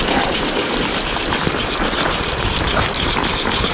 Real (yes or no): yes